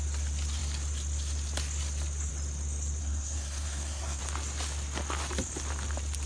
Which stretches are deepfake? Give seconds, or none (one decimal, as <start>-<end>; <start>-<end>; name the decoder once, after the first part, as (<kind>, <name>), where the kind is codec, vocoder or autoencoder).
3.0-4.2 (codec, SNAC)